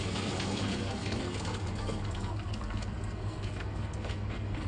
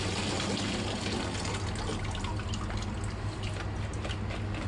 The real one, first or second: second